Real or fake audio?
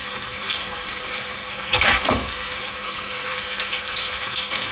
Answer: fake